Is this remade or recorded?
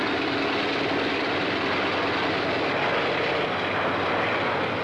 recorded